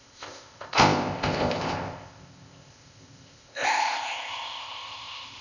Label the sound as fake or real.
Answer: fake